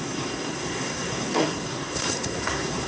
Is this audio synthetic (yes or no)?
yes